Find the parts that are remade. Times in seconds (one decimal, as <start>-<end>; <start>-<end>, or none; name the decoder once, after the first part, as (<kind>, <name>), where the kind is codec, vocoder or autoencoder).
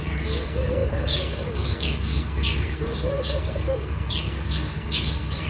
0.0-5.5 (codec, SNAC)